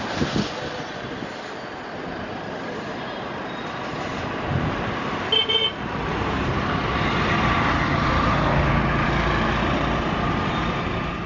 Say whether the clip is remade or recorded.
recorded